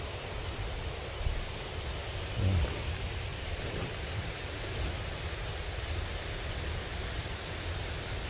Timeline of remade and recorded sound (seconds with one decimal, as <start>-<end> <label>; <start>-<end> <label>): 0.0-3.3 recorded; 3.3-4.3 remade; 4.3-8.3 recorded